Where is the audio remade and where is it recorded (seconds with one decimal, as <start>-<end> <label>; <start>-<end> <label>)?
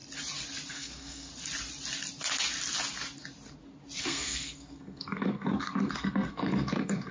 0.0-0.7 recorded; 0.7-1.3 remade; 1.3-4.0 recorded; 4.0-7.1 remade